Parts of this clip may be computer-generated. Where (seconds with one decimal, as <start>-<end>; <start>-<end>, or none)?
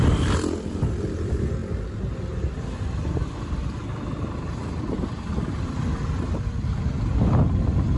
0.0-8.0